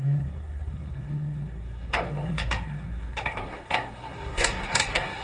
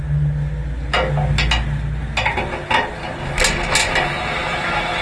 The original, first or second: second